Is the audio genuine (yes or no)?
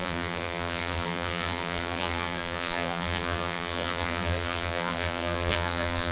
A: no